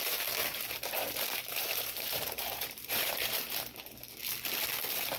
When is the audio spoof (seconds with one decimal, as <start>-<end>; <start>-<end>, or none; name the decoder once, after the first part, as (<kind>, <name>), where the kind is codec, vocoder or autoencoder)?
0.4-3.5 (vocoder, BigVGAN v2)